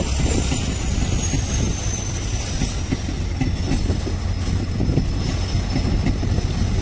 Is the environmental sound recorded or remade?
recorded